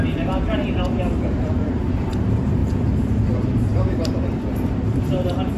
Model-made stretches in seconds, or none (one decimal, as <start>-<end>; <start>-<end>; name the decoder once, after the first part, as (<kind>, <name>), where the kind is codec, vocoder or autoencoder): 0.0-2.6 (vocoder, BigVGAN v2); 3.3-5.6